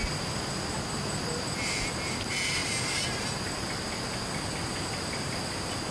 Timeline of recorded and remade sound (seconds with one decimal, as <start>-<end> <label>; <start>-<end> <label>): 0.0-5.9 recorded

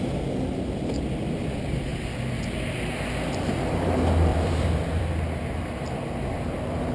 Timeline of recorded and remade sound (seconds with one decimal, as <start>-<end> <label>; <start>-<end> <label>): 0.0-4.3 recorded; 4.3-5.1 remade; 5.1-6.9 recorded

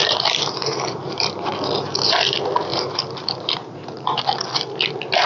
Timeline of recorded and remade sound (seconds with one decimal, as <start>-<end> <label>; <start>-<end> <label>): 0.0-1.5 remade; 1.5-2.7 recorded; 2.7-4.2 remade; 4.2-5.3 recorded

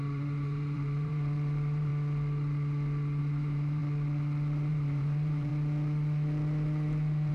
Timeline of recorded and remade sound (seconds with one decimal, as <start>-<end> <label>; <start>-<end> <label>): 0.0-1.9 remade; 1.9-3.2 recorded; 3.2-3.8 remade; 3.8-4.7 recorded; 4.7-5.5 remade; 5.5-7.3 recorded